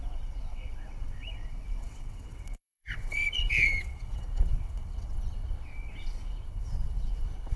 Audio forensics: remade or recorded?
remade